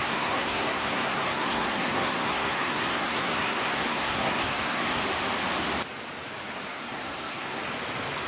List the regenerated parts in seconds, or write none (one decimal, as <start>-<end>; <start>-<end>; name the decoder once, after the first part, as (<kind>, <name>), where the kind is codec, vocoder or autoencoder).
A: 0.0-5.0 (codec, SNAC); 6.7-7.6